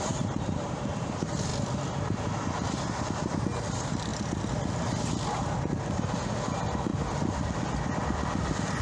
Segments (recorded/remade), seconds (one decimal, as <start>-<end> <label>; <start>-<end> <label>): 0.0-1.5 remade; 1.5-3.6 recorded; 3.6-4.1 remade; 4.1-5.9 recorded; 5.9-6.9 remade; 6.9-8.8 recorded